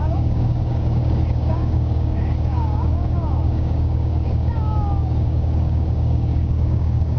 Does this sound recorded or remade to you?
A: remade